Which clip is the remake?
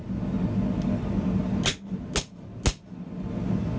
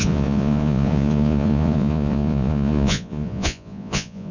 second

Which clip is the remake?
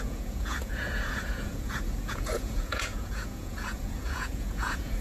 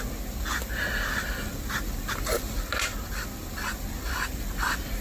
first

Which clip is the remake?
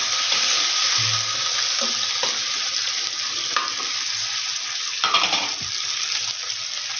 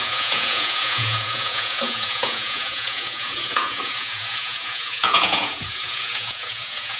second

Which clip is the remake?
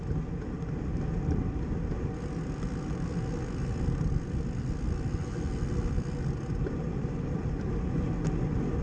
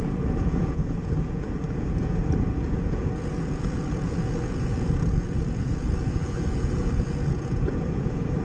second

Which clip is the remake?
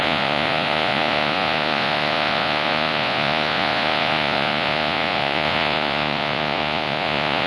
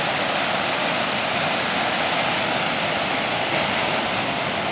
first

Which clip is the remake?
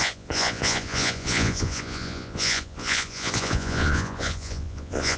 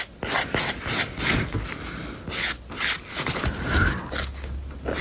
first